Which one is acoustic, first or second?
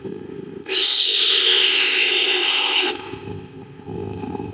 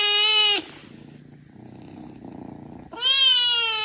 second